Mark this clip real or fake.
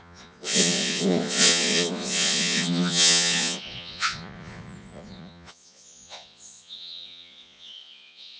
fake